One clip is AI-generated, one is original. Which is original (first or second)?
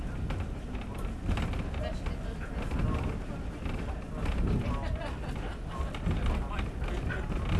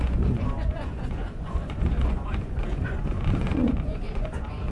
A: first